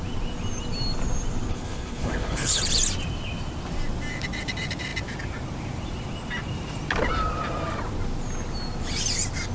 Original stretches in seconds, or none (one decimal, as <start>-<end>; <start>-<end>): 0.0-1.5; 2.6-9.5